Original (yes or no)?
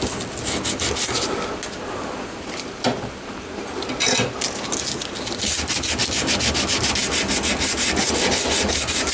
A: yes